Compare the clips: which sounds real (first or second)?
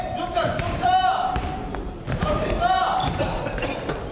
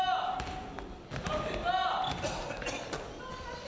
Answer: second